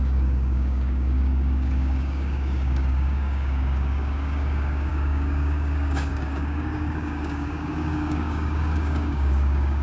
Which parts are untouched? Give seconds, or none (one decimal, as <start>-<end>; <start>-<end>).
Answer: none